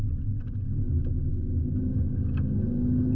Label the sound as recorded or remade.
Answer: recorded